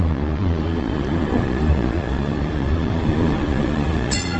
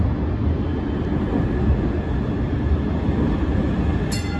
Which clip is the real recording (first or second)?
second